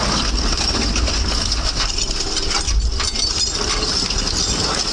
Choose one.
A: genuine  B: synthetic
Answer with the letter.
A